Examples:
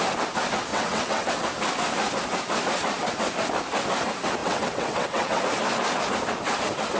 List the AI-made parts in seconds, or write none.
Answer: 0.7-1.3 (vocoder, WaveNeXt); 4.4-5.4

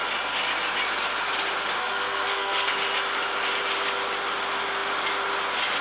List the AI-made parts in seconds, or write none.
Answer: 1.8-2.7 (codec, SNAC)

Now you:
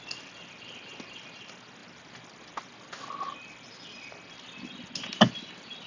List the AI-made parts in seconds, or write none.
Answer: none

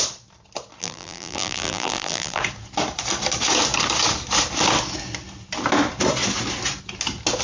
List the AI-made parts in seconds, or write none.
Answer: 0.8-2.4 (vocoder, BigVGAN v2)